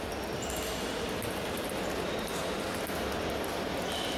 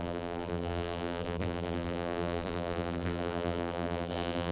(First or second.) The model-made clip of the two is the second